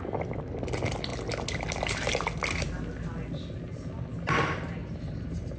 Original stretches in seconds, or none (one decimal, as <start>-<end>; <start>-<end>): 0.0-4.8